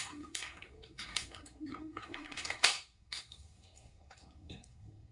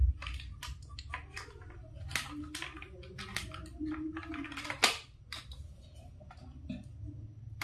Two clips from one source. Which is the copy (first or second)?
first